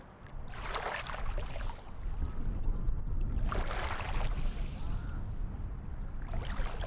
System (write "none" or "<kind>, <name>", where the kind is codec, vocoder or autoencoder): none